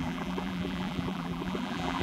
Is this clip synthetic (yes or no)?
yes